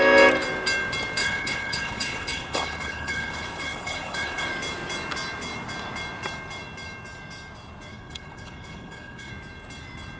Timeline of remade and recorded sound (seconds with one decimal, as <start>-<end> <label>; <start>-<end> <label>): 0.0-1.2 recorded; 1.2-4.5 remade; 4.5-7.9 recorded; 7.9-9.3 remade; 9.3-10.2 recorded